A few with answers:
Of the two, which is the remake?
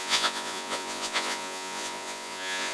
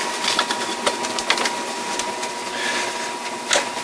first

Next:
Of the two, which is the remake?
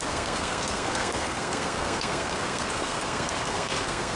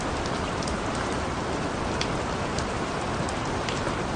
first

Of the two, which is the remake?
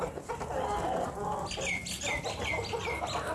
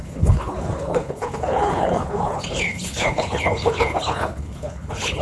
second